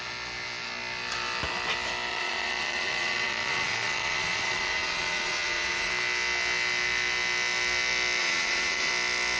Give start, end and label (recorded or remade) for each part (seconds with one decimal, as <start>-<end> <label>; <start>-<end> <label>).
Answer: 0.0-2.1 recorded; 2.1-5.9 remade; 5.9-8.2 recorded; 8.2-8.9 remade; 8.9-9.4 recorded